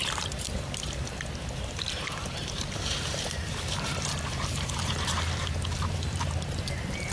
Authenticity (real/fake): fake